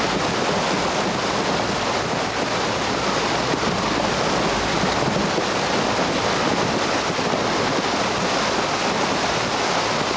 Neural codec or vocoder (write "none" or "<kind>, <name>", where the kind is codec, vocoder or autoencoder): none